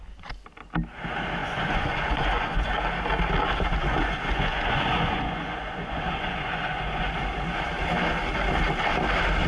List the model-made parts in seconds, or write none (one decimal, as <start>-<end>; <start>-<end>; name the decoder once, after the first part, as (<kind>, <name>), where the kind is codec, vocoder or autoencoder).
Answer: 1.4-2.7 (vocoder, Vocos); 3.8-7.1